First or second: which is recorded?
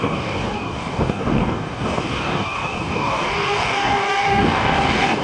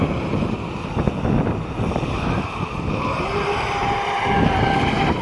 second